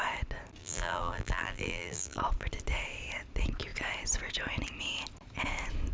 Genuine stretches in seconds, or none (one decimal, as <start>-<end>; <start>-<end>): 0.0-0.6; 2.2-5.9